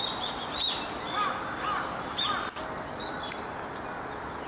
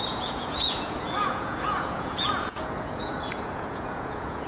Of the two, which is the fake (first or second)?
second